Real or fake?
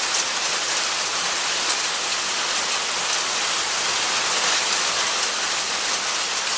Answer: real